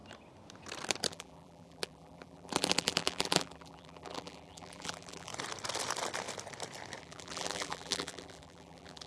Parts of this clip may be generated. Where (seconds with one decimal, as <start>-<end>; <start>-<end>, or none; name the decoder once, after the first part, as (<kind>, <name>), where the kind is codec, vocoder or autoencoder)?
1.1-5.3 (vocoder, BigVGAN v2); 7.0-9.1